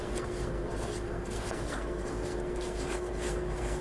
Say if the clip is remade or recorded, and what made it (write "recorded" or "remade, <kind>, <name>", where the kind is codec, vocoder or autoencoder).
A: remade, codec, SNAC